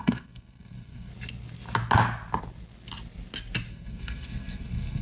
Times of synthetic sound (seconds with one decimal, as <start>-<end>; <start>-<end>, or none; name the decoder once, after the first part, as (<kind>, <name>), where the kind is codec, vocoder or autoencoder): 0.0-1.1 (codec, SNAC); 3.7-5.0